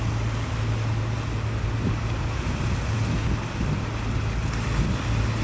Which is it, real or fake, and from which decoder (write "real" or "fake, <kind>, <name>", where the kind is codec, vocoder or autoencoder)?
real